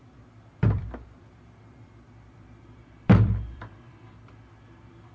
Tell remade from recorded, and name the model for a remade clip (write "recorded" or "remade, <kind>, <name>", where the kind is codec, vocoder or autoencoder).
remade, vocoder, BigVGAN v2